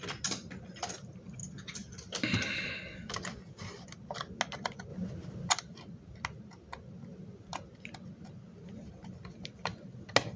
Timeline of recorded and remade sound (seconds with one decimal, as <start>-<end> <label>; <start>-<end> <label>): 0.0-10.4 recorded